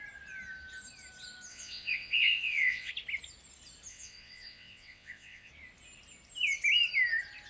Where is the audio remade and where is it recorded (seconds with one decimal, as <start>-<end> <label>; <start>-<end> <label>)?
0.0-1.5 recorded; 1.5-2.9 remade; 2.9-3.9 recorded; 3.9-5.5 remade; 5.5-7.5 recorded